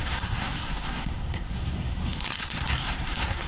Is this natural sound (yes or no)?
no